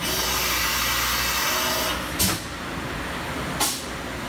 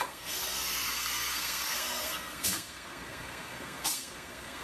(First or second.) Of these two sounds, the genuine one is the first